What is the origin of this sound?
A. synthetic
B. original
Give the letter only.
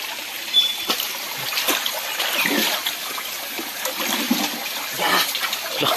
B